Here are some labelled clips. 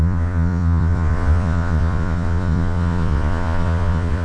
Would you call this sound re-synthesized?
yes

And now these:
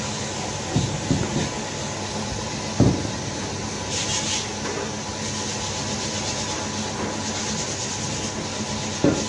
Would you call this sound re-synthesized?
no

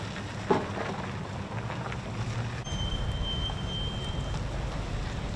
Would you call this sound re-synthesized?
no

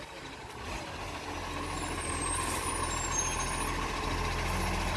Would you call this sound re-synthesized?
no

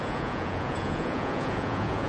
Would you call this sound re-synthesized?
yes